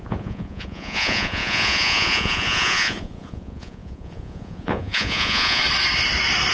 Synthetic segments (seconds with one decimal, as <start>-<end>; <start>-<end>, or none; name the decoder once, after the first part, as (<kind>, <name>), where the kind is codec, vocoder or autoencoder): 0.0-5.6 (vocoder, Vocos)